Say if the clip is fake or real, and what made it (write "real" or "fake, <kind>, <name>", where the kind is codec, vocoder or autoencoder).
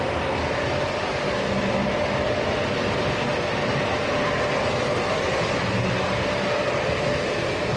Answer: real